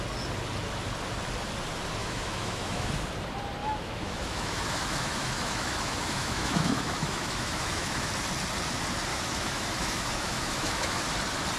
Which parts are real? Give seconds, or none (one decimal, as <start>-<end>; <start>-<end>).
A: 0.0-2.0; 2.9-3.6; 8.1-9.1; 11.0-11.6